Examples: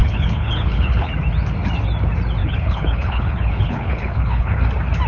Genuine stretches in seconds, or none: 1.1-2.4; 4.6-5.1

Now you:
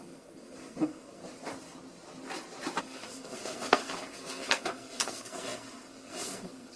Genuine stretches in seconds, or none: 1.2-2.8

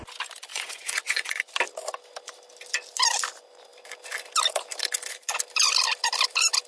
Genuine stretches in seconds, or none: 0.0-0.5; 1.5-6.7

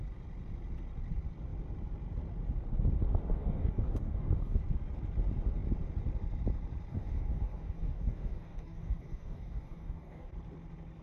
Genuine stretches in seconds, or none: 0.0-3.3; 4.6-6.9; 10.3-11.0